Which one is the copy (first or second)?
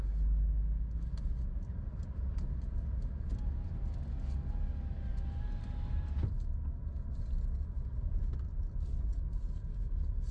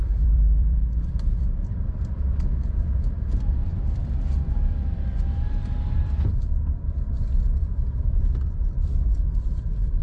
second